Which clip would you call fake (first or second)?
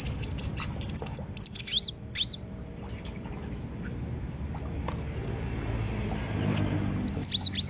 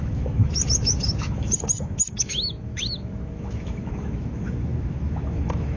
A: second